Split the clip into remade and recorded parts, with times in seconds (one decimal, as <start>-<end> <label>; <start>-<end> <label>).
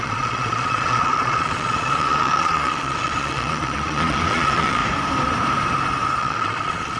0.0-4.8 remade; 4.8-6.2 recorded; 6.2-7.0 remade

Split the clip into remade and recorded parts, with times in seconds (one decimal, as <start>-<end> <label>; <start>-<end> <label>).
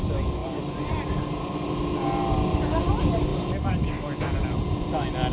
0.0-5.3 recorded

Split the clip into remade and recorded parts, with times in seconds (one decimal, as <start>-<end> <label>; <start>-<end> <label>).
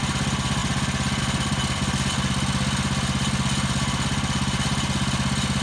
0.0-5.6 recorded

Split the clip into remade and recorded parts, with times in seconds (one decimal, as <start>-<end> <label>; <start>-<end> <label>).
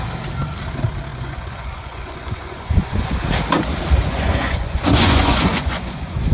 0.0-1.1 recorded; 1.1-3.1 remade; 3.1-4.0 recorded; 4.0-6.3 remade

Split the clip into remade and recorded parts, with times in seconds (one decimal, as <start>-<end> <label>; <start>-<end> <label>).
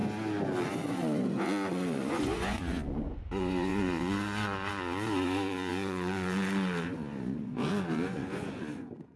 0.0-0.9 recorded; 0.9-9.2 remade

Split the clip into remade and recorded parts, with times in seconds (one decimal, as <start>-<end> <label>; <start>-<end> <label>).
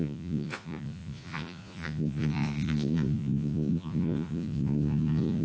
0.0-5.4 remade